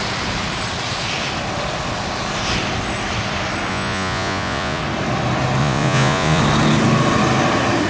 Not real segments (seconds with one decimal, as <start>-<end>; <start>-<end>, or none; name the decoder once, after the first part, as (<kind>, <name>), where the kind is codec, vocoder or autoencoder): 3.7-4.8 (vocoder, Vocos); 5.6-6.4